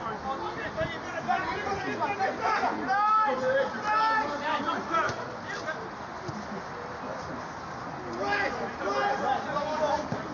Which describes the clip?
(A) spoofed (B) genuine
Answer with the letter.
B